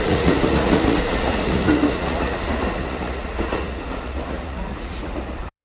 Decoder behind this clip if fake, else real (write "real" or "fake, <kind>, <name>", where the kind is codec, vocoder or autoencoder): fake, vocoder, Vocos